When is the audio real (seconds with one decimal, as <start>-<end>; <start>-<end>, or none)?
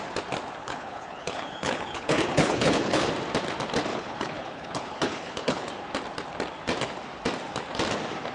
0.0-0.6; 3.1-3.9; 5.7-8.3